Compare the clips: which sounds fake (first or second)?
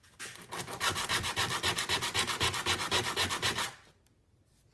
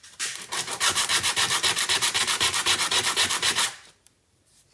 second